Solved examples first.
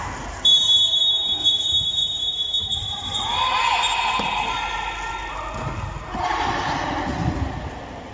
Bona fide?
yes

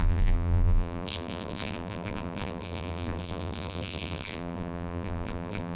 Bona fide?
no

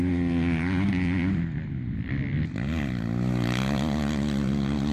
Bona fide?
yes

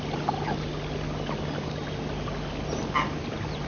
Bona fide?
yes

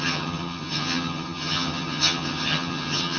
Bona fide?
no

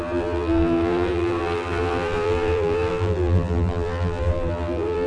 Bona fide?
no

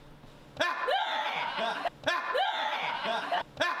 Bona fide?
yes